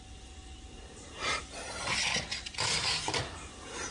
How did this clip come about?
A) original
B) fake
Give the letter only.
A